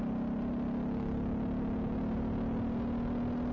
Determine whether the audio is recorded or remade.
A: recorded